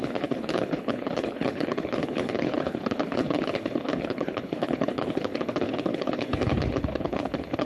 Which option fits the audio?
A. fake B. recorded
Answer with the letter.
A